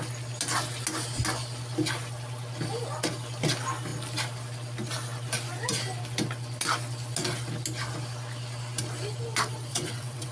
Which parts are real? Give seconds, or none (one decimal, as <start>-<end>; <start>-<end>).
0.0-9.7